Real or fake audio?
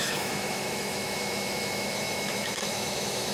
fake